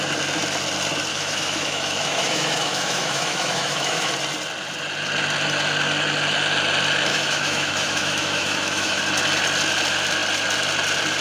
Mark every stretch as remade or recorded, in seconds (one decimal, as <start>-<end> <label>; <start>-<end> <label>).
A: 0.0-1.1 recorded; 1.1-4.1 remade; 4.1-7.1 recorded; 7.1-9.0 remade; 9.0-11.2 recorded